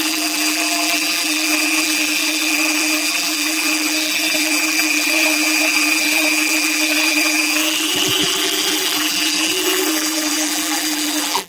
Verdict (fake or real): fake